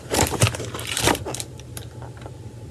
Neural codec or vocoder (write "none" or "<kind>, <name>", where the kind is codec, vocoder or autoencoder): vocoder, BigVGAN v2